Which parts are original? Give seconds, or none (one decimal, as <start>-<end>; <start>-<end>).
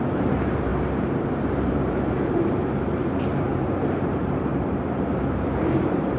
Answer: none